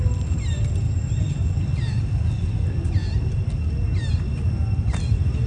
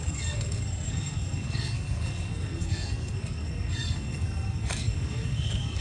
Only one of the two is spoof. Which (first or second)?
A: second